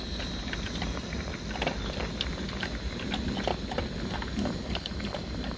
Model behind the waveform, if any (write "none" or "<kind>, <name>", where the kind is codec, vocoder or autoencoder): none